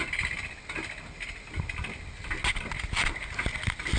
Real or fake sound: real